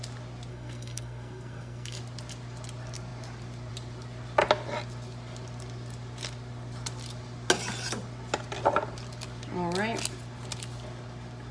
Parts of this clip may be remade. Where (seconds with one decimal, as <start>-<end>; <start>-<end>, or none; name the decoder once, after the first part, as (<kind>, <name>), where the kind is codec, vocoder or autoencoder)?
0.5-2.0 (codec, SNAC)